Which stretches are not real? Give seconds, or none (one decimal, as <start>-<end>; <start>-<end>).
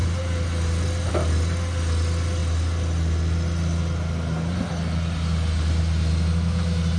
none